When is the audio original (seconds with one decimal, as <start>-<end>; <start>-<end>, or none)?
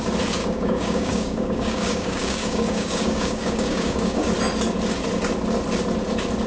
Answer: 0.0-0.4; 4.3-6.5